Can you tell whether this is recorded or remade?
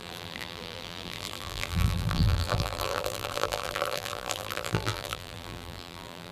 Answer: remade